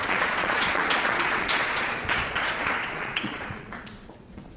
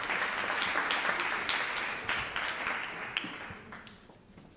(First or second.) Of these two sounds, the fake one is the first